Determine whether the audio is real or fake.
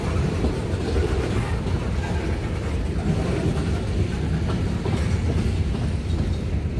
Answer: real